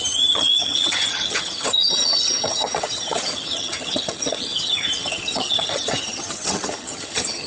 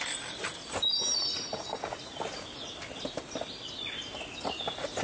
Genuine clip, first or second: second